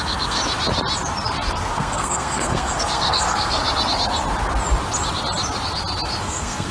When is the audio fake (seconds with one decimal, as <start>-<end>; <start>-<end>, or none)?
0.0-0.4; 1.5-3.6; 6.2-6.7